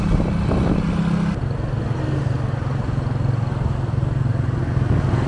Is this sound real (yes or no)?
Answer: yes